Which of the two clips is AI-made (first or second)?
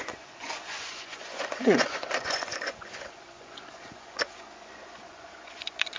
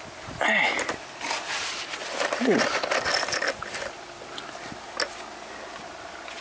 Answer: first